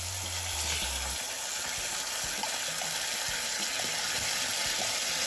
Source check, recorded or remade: recorded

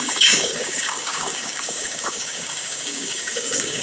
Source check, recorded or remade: remade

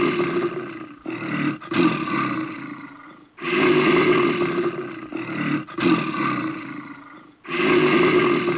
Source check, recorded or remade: recorded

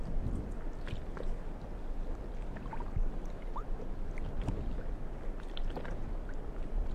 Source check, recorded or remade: recorded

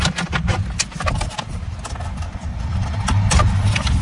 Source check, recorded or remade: recorded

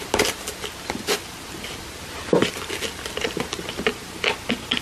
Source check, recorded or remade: recorded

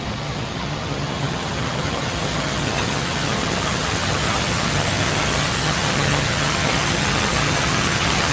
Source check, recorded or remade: remade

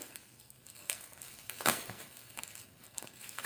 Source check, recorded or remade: remade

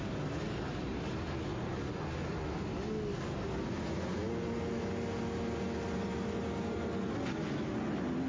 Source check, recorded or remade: recorded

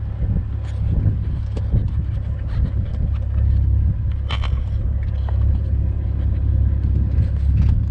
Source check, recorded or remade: recorded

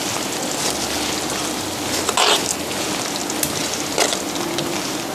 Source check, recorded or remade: recorded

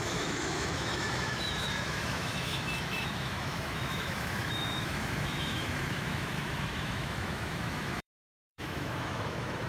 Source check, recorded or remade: remade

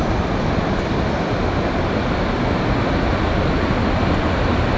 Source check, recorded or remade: recorded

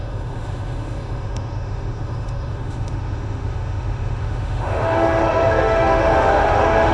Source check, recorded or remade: remade